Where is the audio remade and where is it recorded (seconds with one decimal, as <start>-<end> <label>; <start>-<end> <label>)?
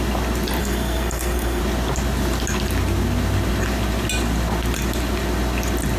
0.0-0.6 recorded; 0.6-1.6 remade; 1.6-6.0 recorded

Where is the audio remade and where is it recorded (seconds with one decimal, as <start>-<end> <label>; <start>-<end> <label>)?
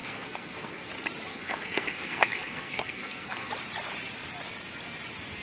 0.0-0.9 remade; 0.9-1.3 recorded; 1.3-3.5 remade; 3.5-5.4 recorded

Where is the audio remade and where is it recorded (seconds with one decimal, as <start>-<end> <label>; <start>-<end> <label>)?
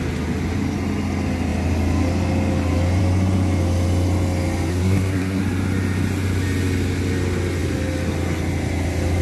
0.0-4.7 recorded; 4.7-5.4 remade; 5.4-9.2 recorded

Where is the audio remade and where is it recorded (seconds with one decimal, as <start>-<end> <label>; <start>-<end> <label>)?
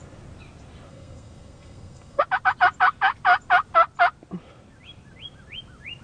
0.0-0.9 recorded; 0.9-2.2 remade; 2.2-6.0 recorded